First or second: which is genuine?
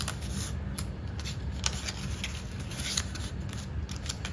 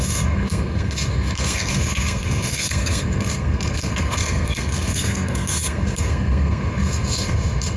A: first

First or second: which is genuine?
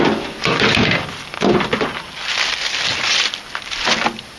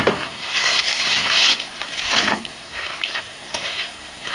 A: first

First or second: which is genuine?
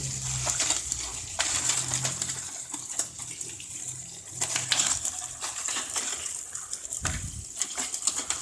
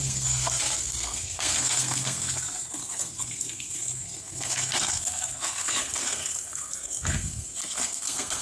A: first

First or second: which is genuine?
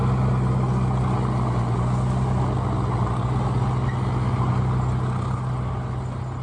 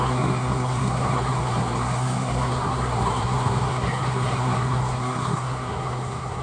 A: first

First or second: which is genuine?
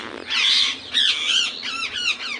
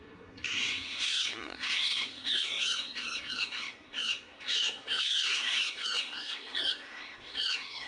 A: first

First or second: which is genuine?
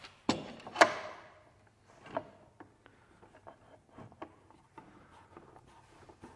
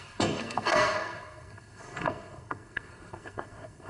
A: first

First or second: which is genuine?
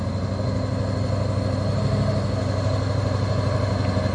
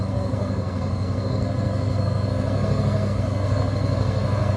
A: first